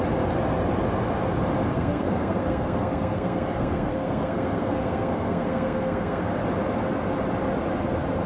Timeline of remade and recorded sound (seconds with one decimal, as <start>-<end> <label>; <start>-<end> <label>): 0.0-1.7 recorded; 1.7-6.4 remade; 6.4-8.3 recorded